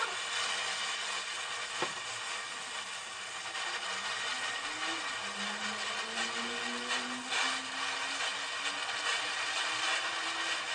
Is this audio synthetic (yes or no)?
no